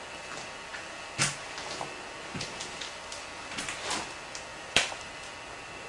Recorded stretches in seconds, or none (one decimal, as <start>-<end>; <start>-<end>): 0.0-4.5; 5.1-5.9